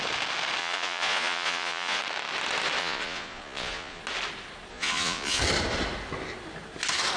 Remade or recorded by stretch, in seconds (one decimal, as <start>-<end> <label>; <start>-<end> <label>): 0.0-0.6 recorded; 0.6-2.0 remade; 2.0-2.8 recorded; 2.8-4.0 remade; 4.0-4.7 recorded; 4.7-5.4 remade; 5.4-7.2 recorded